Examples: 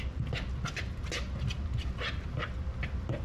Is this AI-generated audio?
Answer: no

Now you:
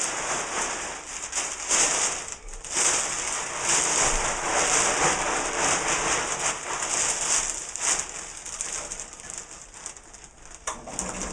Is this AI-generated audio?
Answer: no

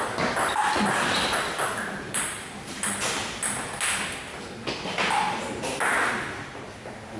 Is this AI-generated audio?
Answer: no